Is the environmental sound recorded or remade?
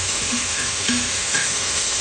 remade